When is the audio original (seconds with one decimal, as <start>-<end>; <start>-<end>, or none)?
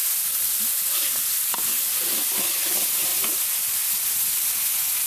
0.0-5.1